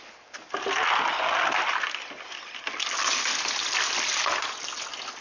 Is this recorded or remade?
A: recorded